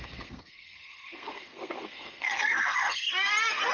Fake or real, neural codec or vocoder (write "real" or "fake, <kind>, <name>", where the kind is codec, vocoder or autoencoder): fake, codec, SNAC